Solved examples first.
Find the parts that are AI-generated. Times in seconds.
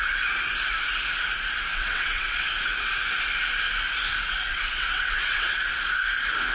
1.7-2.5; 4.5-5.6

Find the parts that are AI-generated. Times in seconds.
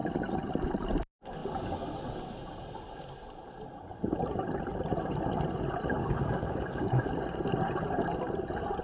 6.0-7.1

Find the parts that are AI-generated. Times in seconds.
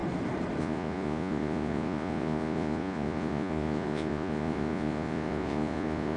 0.6-6.2